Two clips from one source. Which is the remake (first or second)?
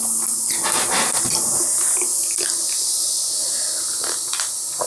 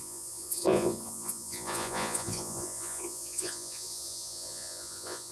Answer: second